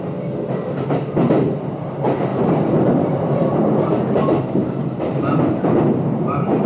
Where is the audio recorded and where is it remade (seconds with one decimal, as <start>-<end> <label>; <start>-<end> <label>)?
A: 0.0-2.3 recorded; 2.3-3.5 remade; 3.5-4.6 recorded; 4.6-5.7 remade; 5.7-6.7 recorded